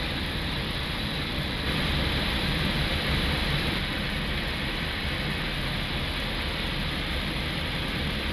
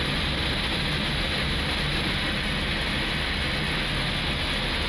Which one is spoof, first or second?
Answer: first